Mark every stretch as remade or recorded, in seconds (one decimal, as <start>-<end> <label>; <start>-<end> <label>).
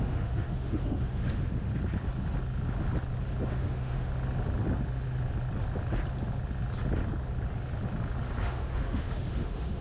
0.0-1.7 remade; 1.7-3.5 recorded; 3.5-4.1 remade; 4.1-8.4 recorded; 8.4-9.8 remade